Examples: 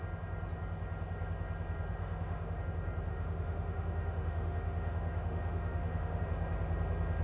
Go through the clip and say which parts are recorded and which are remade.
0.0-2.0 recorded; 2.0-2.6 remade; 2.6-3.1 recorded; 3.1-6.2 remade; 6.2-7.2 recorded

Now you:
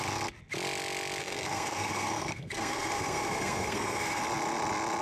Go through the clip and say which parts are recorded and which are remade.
0.0-1.2 recorded; 1.2-4.2 remade; 4.2-5.0 recorded

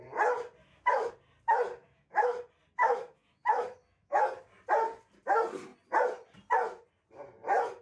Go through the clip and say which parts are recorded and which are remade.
0.0-0.6 recorded; 0.6-1.1 remade; 1.1-1.8 recorded; 1.8-2.4 remade; 2.4-2.8 recorded; 2.8-4.2 remade; 4.2-7.8 recorded